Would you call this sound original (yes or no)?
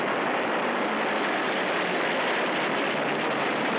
no